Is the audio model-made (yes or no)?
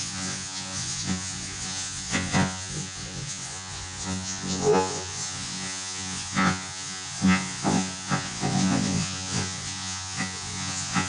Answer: yes